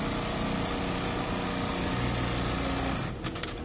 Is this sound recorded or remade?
recorded